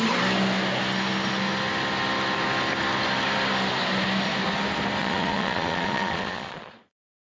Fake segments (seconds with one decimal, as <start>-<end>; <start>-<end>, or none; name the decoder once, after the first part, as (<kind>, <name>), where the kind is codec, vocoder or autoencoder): 5.0-7.3 (vocoder, Vocos)

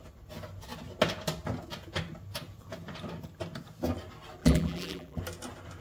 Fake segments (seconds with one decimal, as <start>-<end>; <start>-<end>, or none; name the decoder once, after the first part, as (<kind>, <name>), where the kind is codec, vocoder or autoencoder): 4.4-5.2 (vocoder, BigVGAN v2)

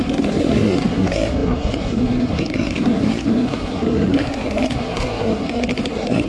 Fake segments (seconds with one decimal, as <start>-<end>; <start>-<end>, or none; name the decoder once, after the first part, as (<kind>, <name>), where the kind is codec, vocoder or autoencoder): 0.0-6.3 (codec, SNAC)